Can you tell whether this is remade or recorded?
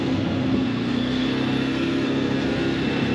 remade